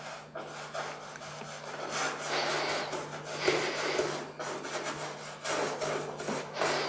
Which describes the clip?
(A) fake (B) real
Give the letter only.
B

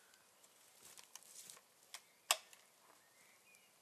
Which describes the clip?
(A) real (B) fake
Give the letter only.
A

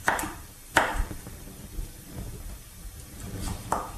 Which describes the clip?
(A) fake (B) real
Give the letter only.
A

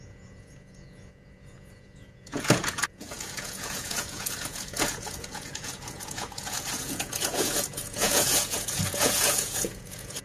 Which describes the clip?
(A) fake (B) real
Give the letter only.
A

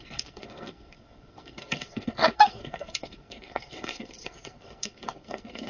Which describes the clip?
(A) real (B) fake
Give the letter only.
B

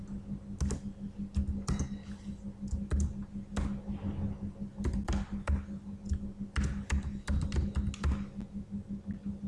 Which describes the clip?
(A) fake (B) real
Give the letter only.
B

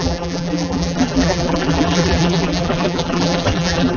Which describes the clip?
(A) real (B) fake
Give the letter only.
B